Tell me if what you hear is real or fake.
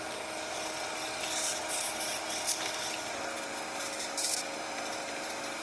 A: real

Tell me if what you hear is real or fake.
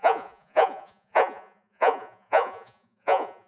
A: fake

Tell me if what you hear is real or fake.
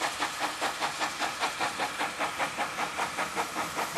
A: real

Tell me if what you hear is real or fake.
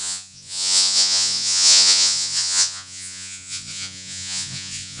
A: fake